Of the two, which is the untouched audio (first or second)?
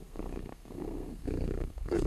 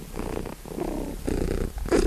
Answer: second